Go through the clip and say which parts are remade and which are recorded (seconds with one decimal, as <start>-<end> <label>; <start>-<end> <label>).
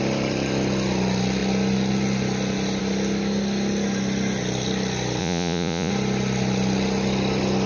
0.0-5.2 recorded; 5.2-5.9 remade; 5.9-7.7 recorded